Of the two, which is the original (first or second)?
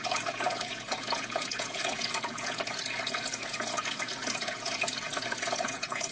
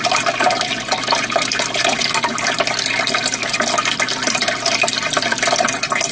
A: second